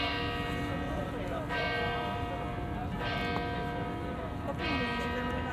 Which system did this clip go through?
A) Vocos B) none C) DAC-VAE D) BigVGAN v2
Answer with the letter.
B